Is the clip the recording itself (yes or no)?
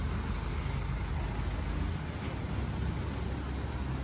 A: yes